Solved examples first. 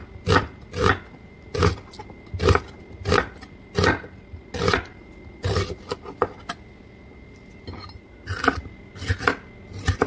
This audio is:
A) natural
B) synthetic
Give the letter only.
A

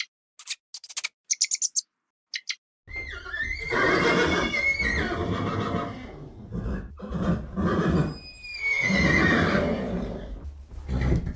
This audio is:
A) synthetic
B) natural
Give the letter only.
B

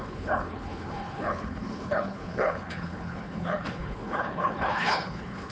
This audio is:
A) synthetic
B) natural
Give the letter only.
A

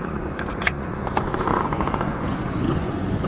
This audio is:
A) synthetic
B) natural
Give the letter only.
A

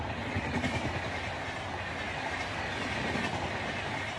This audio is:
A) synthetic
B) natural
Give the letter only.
B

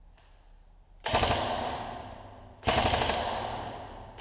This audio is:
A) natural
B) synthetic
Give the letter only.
A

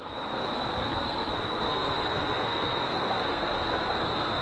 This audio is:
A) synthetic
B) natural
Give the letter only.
A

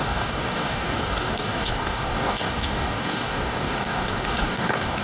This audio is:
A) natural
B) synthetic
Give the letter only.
B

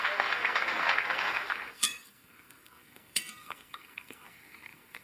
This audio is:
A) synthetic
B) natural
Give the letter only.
A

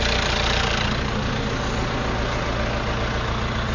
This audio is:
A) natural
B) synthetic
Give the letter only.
A